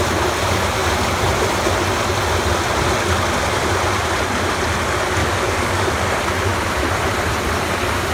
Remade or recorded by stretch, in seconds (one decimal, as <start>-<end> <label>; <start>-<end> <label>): 0.0-5.2 recorded; 5.2-5.9 remade; 5.9-8.1 recorded

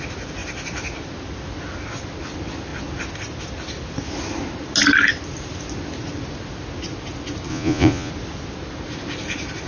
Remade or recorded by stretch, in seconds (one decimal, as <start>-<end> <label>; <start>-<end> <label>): 0.0-7.5 recorded; 7.5-8.1 remade; 8.1-9.7 recorded

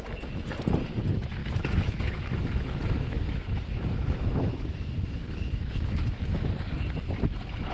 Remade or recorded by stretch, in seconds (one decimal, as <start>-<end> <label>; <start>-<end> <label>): 0.0-1.4 recorded; 1.4-6.0 remade; 6.0-7.7 recorded

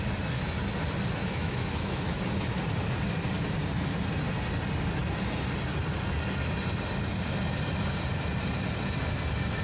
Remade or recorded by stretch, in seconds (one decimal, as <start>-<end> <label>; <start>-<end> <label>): 0.0-1.2 recorded; 1.2-2.3 remade; 2.3-9.6 recorded

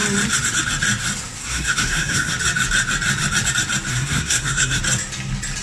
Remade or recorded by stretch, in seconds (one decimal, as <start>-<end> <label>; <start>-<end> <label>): 0.0-1.4 recorded; 1.4-2.3 remade; 2.3-3.9 recorded; 3.9-4.8 remade; 4.8-5.6 recorded